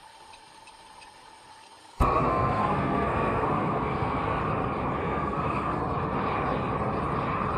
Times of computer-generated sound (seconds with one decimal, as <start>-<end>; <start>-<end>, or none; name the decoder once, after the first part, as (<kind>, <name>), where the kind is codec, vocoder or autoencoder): 1.8-4.4 (codec, SNAC); 5.0-5.8